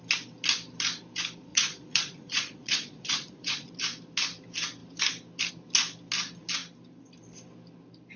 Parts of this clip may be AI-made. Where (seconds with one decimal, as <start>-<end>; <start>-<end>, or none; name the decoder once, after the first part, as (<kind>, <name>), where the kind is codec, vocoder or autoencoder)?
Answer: 1.5-3.7 (vocoder, Vocos)